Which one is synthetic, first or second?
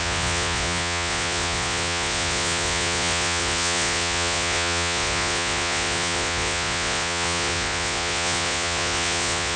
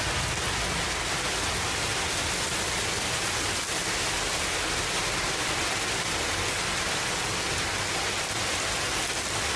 first